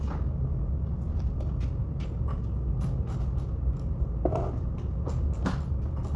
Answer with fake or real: real